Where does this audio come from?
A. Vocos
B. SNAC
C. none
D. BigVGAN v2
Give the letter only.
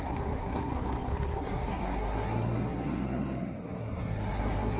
B